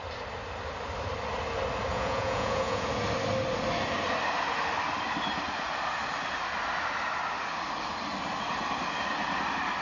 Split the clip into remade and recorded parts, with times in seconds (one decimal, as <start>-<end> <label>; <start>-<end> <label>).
0.0-1.9 recorded; 1.9-2.9 remade; 2.9-9.8 recorded